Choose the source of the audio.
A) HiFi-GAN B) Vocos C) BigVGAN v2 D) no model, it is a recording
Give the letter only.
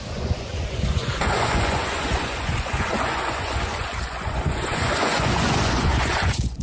B